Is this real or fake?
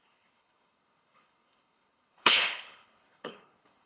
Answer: fake